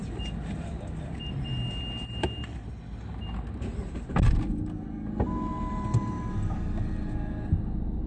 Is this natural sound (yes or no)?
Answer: yes